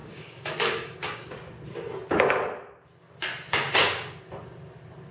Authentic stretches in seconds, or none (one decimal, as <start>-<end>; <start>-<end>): 1.5-5.1